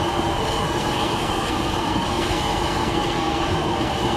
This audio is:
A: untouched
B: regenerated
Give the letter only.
B